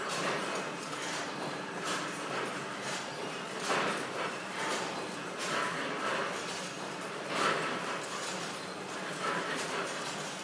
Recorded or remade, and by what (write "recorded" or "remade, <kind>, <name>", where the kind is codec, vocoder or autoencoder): remade, vocoder, BigVGAN v2